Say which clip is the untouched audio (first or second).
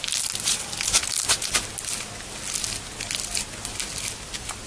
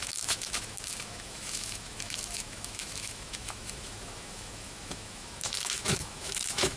first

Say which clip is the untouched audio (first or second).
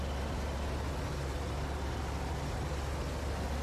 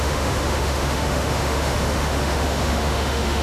first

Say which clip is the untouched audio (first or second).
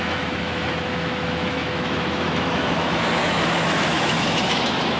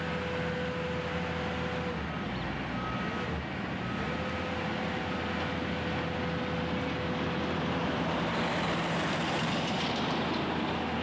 second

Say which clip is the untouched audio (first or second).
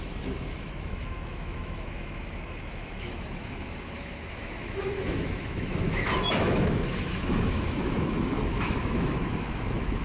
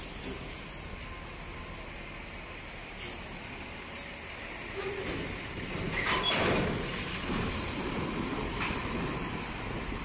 second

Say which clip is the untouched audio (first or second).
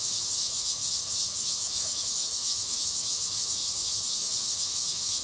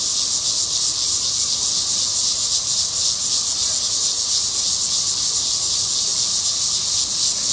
second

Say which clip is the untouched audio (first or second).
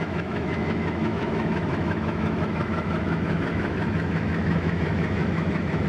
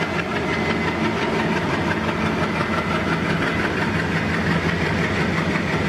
second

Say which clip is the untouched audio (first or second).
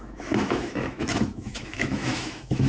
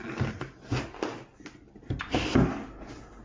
second